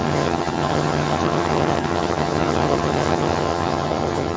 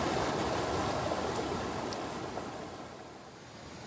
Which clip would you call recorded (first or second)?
second